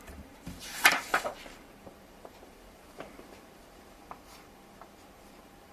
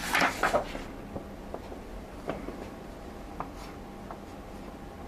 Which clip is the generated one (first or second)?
first